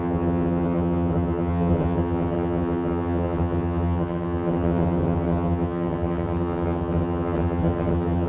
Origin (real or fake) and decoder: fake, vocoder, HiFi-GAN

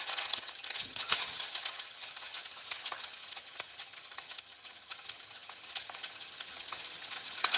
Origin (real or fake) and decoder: fake, vocoder, HiFi-GAN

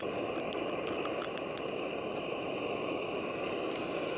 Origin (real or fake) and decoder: real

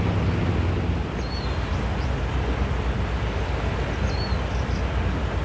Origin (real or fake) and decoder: real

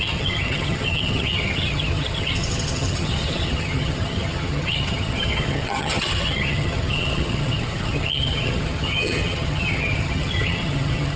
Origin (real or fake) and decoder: fake, vocoder, HiFi-GAN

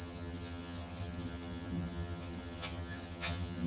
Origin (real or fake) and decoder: fake, vocoder, HiFi-GAN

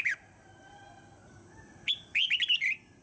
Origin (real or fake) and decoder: real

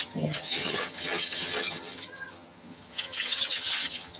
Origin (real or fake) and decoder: fake, vocoder, HiFi-GAN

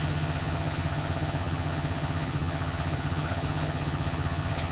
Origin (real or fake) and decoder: fake, vocoder, HiFi-GAN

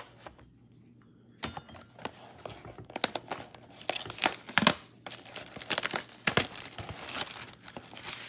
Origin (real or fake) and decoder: real